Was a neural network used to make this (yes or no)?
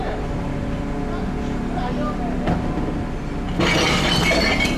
no